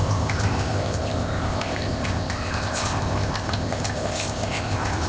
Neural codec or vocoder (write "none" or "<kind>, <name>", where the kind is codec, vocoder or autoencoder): codec, ZipCodec